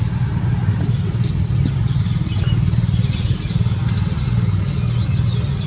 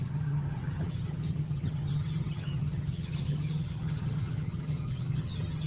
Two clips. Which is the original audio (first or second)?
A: first